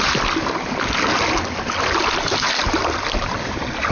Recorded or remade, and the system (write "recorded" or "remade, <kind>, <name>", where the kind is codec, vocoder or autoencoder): recorded